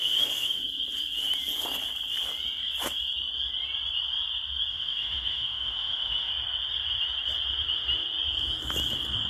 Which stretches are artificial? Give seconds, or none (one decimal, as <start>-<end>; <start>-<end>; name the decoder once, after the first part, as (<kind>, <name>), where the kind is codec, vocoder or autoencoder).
0.0-0.6 (autoencoder, DAC-VAE); 4.7-6.3